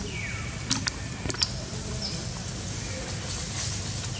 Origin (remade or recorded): recorded